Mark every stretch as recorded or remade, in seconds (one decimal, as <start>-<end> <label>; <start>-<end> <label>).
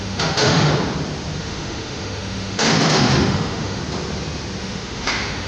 0.0-0.7 remade; 0.7-1.4 recorded; 1.4-3.8 remade; 3.8-4.6 recorded; 4.6-5.5 remade